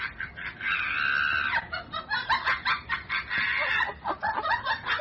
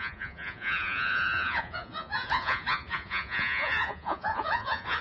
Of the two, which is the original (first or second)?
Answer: first